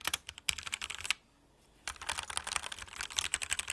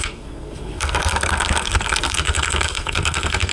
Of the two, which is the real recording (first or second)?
first